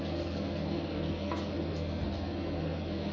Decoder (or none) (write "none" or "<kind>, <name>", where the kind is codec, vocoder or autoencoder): codec, SNAC